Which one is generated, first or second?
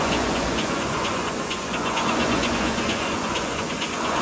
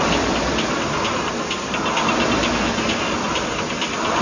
first